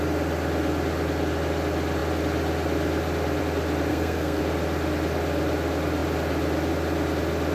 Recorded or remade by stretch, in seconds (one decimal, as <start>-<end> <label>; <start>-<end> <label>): 0.0-3.9 recorded; 3.9-4.4 remade; 4.4-7.5 recorded